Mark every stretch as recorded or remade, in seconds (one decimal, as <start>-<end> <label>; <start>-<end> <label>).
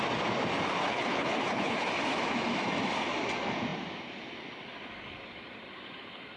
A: 0.0-0.8 recorded; 0.8-1.9 remade; 1.9-6.4 recorded